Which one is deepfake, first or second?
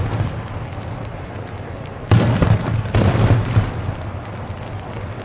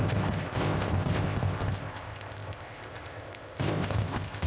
second